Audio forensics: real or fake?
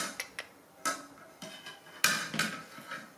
real